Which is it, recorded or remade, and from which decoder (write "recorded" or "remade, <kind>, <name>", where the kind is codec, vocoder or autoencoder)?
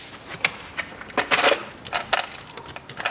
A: recorded